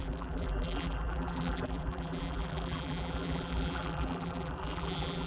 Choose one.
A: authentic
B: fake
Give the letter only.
B